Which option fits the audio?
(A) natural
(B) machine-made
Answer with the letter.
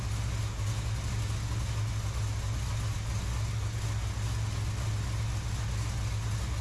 A